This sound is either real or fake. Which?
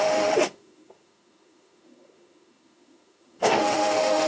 fake